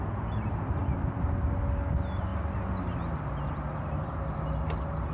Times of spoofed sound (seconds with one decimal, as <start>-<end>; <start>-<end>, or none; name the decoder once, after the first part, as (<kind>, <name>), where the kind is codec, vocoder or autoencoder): none